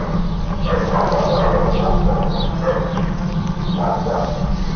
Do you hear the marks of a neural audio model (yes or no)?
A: no